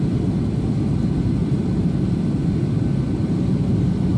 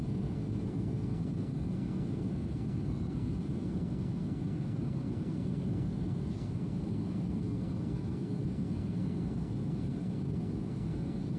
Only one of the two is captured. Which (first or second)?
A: first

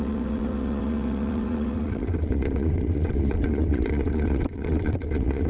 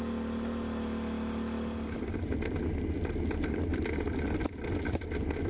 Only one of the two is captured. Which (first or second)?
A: second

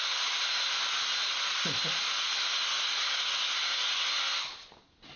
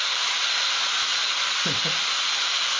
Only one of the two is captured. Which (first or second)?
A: first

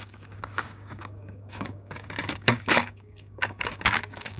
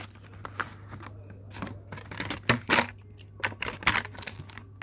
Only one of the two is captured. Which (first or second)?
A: second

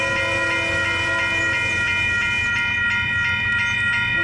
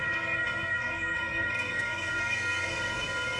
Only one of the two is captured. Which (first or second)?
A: first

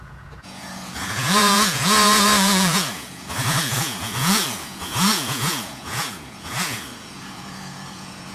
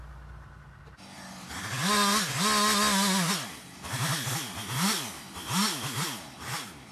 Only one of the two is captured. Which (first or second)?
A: second